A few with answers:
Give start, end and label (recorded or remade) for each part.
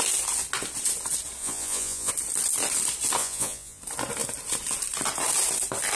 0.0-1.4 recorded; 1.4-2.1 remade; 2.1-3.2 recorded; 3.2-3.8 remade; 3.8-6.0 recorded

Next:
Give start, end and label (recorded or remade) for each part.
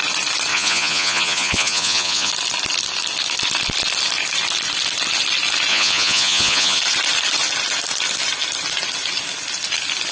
0.0-0.5 recorded; 0.5-2.3 remade; 2.3-5.7 recorded; 5.7-6.8 remade; 6.8-10.1 recorded